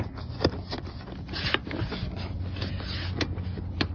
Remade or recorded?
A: recorded